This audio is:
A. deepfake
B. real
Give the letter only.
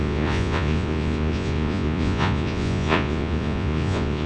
A